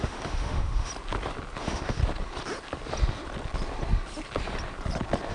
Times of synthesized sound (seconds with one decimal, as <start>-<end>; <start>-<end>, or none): 0.0-0.9; 1.6-2.0